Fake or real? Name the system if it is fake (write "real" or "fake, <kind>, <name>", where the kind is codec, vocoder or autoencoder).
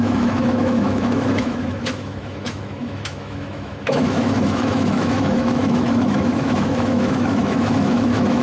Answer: fake, autoencoder, DAC-VAE